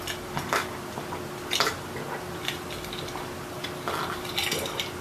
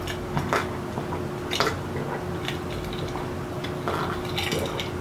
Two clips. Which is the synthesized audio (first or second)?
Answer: first